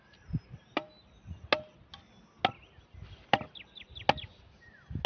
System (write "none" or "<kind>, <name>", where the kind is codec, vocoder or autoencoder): none